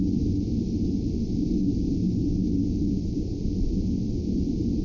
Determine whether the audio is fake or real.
real